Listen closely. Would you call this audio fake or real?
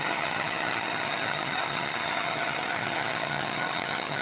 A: fake